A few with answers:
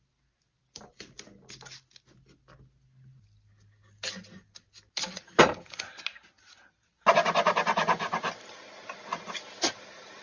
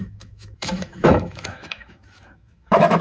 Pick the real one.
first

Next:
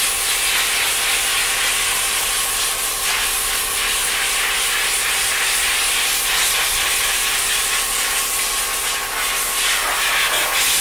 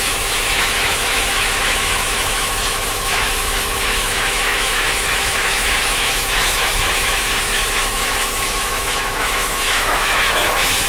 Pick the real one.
first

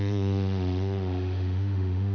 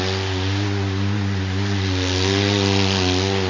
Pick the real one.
second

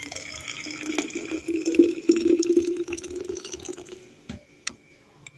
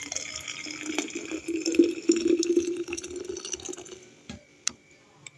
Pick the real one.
second